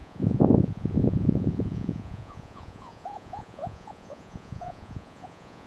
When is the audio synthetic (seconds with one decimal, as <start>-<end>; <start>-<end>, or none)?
0.0-5.7